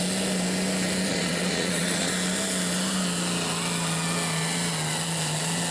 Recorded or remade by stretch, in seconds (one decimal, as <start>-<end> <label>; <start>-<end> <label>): 0.0-1.1 recorded; 1.1-2.1 remade; 2.1-5.7 recorded